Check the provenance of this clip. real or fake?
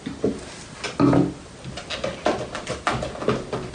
real